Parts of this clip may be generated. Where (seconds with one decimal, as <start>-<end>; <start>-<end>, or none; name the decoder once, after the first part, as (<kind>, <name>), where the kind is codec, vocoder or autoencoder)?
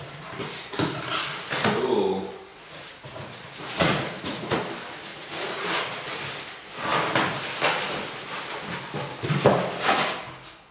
2.5-4.6 (vocoder, Vocos); 5.1-5.9